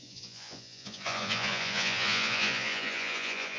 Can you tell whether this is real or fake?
fake